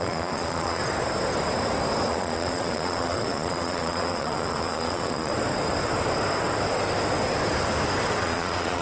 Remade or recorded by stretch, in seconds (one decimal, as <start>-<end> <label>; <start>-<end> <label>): 0.0-0.8 remade; 0.8-2.1 recorded; 2.1-5.3 remade; 5.3-8.2 recorded; 8.2-8.8 remade